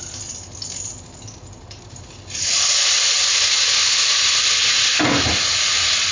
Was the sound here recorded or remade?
recorded